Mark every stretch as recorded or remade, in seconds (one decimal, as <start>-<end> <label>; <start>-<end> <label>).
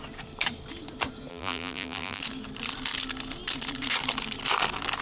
0.0-1.3 recorded; 1.3-2.2 remade; 2.2-5.0 recorded